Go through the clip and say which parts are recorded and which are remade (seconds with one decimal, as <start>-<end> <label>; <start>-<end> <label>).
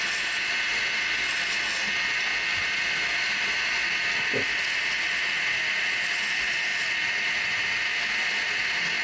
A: 0.0-9.0 recorded